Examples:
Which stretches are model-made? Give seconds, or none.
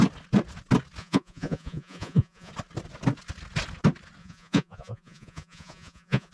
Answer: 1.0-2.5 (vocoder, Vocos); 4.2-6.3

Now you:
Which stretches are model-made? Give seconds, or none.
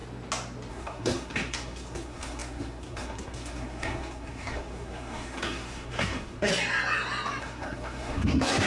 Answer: 0.7-6.5 (codec, SNAC); 7.4-8.7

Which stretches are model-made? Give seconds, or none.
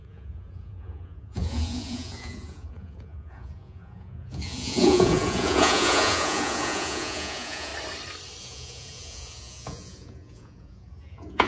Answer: 0.0-7.7 (vocoder, Vocos); 8.4-11.5